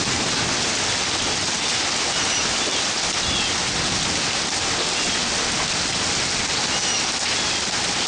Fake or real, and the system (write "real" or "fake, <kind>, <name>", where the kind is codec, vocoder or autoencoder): real